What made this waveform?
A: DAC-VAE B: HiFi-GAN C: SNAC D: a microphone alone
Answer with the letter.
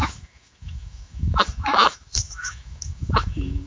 A